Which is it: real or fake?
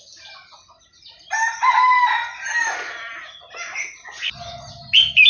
real